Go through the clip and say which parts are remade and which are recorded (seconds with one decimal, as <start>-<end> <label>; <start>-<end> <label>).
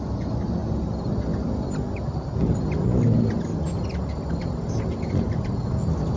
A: 0.0-6.2 recorded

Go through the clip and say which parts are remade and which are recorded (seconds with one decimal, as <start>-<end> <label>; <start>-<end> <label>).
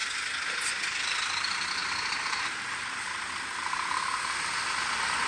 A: 0.0-5.3 recorded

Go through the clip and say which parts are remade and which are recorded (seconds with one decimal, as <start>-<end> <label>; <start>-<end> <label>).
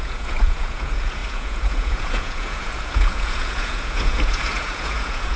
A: 0.0-5.4 remade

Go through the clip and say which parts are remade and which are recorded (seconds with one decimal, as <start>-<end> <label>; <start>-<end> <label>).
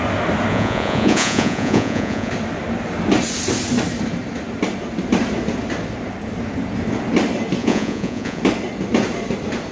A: 0.0-0.5 recorded; 0.5-2.3 remade; 2.3-7.6 recorded; 7.6-8.4 remade; 8.4-9.7 recorded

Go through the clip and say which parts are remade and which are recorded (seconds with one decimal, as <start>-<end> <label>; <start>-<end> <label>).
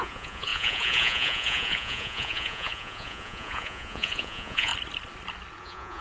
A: 0.0-4.7 remade; 4.7-5.6 recorded; 5.6-6.0 remade